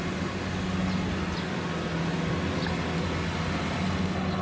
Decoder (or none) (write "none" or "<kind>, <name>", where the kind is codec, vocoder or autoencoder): none